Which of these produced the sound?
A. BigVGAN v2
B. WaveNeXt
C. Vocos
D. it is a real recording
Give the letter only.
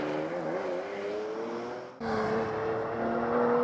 D